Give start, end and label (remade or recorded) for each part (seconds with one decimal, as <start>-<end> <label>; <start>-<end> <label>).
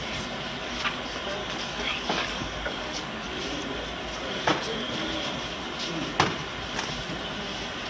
0.0-1.4 recorded; 1.4-3.4 remade; 3.4-7.9 recorded